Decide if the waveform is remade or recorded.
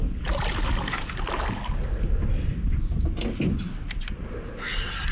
recorded